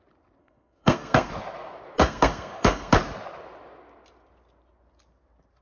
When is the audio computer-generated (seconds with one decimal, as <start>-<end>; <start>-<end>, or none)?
0.4-1.3; 2.0-2.9